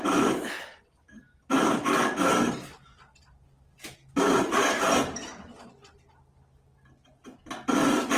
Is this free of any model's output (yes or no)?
yes